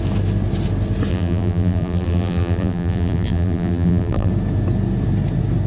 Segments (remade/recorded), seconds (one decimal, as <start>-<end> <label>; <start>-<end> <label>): 0.0-1.1 recorded; 1.1-4.3 remade; 4.3-5.7 recorded